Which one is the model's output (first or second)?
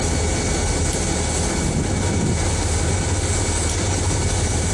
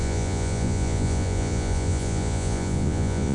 second